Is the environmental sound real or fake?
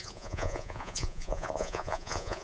fake